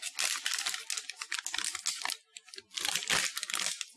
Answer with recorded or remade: recorded